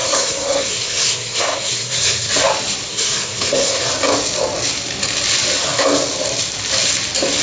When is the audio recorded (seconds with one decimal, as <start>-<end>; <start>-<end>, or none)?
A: 2.3-2.9; 3.9-7.4